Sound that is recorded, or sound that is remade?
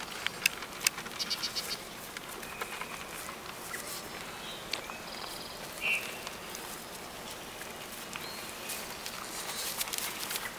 recorded